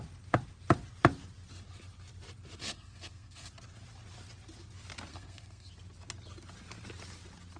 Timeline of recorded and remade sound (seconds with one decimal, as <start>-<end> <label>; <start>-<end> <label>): 0.0-2.6 recorded; 2.6-3.5 remade; 3.5-5.1 recorded; 5.1-5.7 remade; 5.7-7.6 recorded